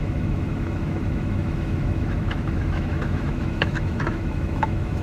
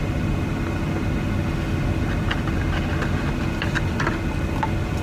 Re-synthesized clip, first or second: first